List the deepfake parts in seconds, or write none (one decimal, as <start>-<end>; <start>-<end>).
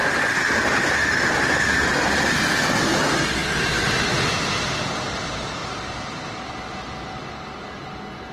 none